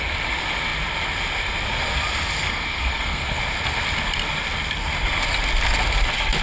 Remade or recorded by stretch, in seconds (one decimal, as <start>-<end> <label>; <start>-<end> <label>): 0.0-2.5 recorded; 2.5-3.4 remade; 3.4-6.4 recorded